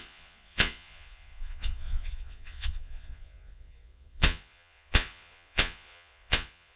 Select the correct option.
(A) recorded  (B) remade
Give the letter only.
B